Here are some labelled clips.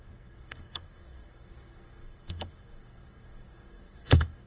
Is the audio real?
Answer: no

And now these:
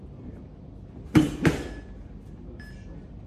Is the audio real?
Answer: yes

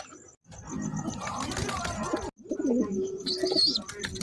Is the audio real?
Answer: yes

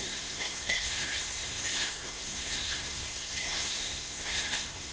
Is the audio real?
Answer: no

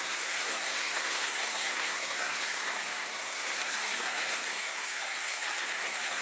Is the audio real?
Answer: no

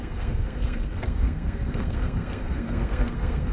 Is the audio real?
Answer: no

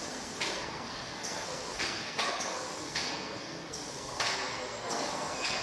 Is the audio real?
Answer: no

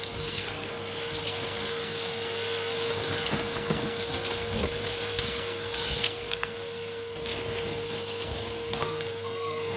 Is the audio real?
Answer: no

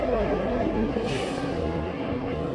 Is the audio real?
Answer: no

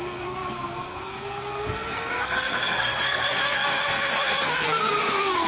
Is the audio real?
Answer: no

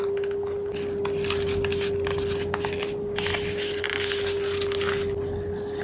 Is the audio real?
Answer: yes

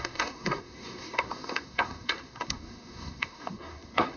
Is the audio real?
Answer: no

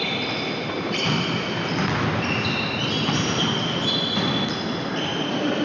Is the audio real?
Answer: yes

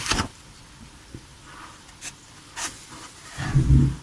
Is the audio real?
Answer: yes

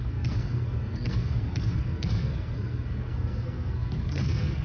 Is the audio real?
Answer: no